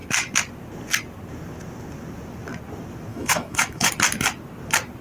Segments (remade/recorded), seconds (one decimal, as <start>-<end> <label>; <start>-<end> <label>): 0.0-3.1 recorded; 3.1-3.9 remade; 3.9-5.0 recorded